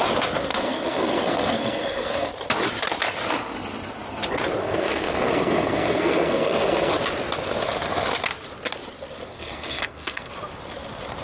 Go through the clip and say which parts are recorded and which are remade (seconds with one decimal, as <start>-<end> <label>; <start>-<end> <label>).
0.0-0.5 recorded; 0.5-2.3 remade; 2.3-4.6 recorded; 4.6-6.9 remade; 6.9-9.3 recorded; 9.3-10.3 remade; 10.3-11.2 recorded